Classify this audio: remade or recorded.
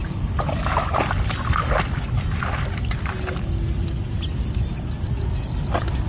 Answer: recorded